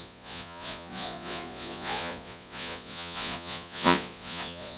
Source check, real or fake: fake